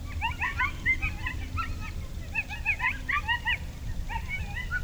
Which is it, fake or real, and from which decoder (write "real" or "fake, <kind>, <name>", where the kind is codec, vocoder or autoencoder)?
real